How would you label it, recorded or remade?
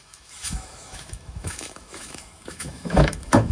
remade